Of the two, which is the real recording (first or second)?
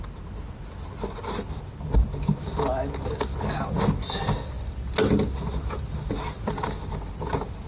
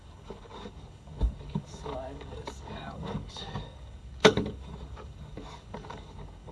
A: first